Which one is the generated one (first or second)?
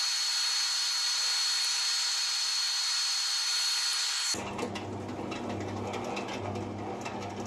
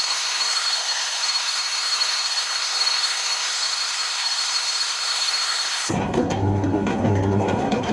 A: second